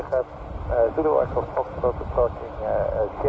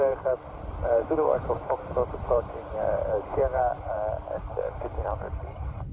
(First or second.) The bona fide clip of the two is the first